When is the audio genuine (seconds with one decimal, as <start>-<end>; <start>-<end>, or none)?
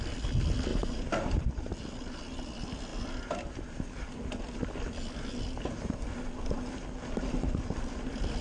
0.0-0.7; 1.5-8.4